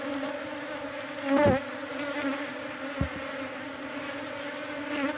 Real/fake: real